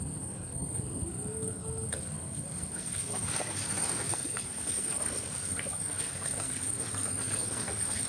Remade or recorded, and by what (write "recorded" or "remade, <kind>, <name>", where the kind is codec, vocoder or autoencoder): remade, codec, SNAC